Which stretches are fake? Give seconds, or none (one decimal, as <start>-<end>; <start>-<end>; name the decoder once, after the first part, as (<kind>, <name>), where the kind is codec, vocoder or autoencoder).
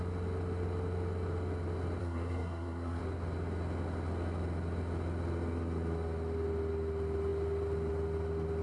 2.0-3.0 (codec, SNAC)